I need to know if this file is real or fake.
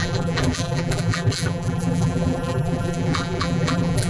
fake